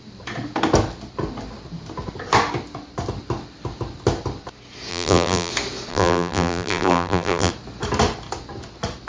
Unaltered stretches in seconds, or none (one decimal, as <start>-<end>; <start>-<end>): 0.0-4.9; 5.5-5.9; 7.5-9.1